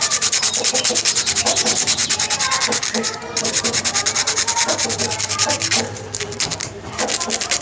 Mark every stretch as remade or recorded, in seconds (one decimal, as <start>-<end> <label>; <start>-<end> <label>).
0.0-7.6 remade